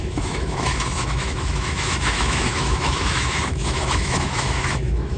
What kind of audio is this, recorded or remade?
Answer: remade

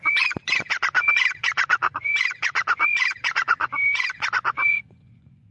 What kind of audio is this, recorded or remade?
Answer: remade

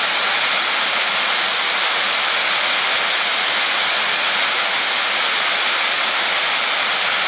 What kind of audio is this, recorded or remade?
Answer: recorded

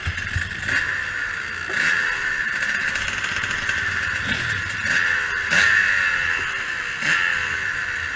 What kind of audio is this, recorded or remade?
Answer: recorded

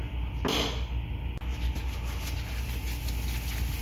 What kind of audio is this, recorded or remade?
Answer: recorded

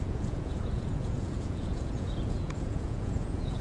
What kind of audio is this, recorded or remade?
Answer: remade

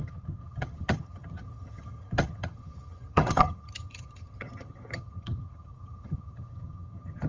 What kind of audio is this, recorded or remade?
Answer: remade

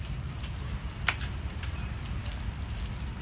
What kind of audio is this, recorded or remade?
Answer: recorded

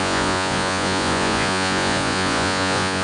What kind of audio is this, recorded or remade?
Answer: remade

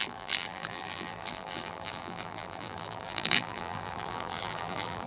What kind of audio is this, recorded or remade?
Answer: remade